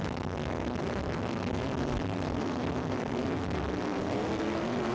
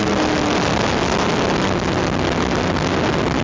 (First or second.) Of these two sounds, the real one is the second